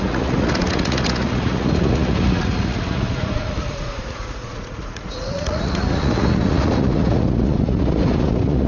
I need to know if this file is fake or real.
fake